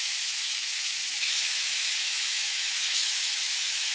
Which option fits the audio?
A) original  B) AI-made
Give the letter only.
B